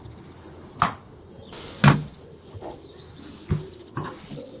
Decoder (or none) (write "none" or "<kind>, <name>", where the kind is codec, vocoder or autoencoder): none